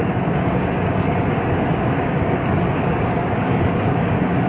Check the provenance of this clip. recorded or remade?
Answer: remade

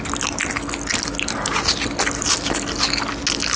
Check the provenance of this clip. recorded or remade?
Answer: recorded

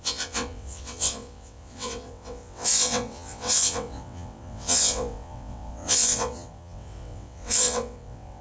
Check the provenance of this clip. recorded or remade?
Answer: remade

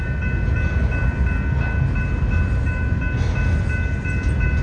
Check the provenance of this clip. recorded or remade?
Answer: recorded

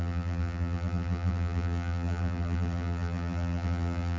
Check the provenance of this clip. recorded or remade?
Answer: remade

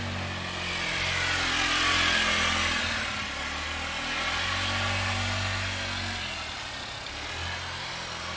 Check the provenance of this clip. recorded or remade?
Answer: recorded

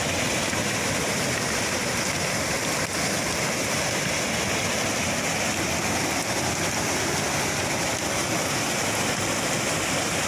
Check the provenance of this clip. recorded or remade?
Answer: recorded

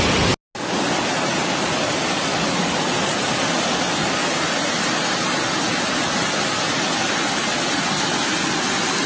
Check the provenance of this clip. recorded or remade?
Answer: recorded